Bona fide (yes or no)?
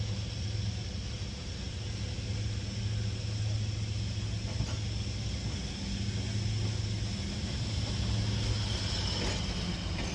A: yes